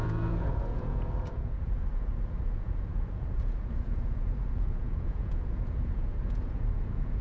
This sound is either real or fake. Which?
fake